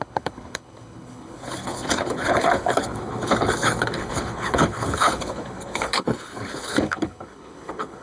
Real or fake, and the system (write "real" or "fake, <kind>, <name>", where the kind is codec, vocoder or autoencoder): fake, codec, HILCodec